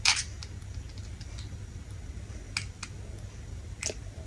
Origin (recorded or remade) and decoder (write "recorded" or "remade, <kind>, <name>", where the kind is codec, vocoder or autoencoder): recorded